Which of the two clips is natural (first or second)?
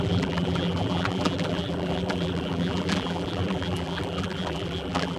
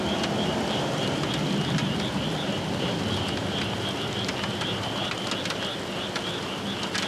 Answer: second